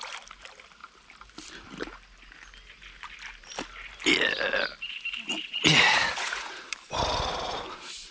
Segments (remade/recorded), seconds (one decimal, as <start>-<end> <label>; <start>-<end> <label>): 0.0-5.4 recorded; 5.4-6.6 remade; 6.6-8.1 recorded